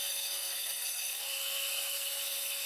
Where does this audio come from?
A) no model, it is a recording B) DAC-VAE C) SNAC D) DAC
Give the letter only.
C